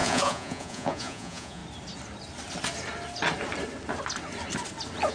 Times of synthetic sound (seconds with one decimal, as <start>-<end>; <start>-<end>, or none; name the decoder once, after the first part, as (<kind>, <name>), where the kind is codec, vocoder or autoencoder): 0.0-1.6 (vocoder, Vocos)